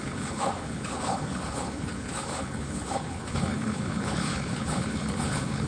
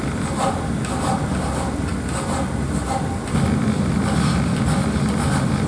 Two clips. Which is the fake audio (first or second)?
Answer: first